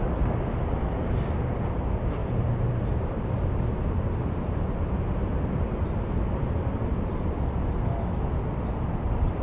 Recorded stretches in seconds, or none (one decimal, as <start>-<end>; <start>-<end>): 0.0-9.4